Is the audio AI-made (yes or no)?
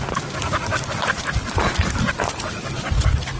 yes